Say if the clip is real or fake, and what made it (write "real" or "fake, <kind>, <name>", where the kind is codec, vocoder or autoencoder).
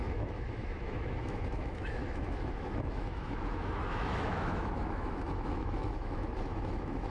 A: fake, autoencoder, DAC-VAE